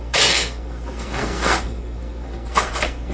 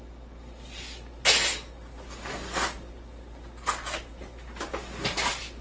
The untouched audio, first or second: second